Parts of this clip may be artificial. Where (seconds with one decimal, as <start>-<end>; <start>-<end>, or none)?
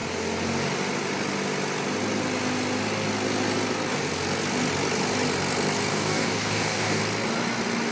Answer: 5.9-7.0